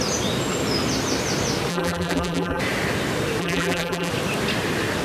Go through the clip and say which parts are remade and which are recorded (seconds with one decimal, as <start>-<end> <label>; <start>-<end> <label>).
0.0-1.7 recorded; 1.7-2.6 remade; 2.6-3.4 recorded; 3.4-4.1 remade; 4.1-5.0 recorded